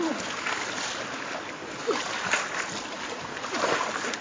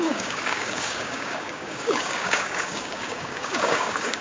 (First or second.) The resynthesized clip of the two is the second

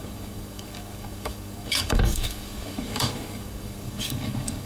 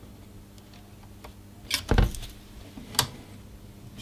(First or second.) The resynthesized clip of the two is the first